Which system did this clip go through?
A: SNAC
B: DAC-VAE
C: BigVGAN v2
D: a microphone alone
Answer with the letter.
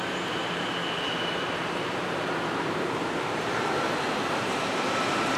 C